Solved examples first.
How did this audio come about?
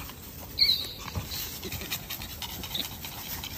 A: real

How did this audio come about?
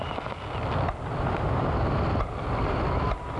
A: real